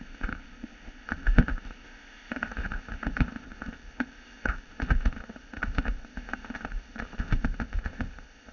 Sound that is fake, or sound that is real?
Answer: fake